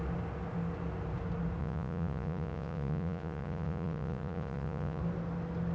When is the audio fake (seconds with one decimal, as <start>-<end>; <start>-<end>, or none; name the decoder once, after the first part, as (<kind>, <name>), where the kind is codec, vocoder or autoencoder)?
1.6-5.0 (vocoder, Vocos)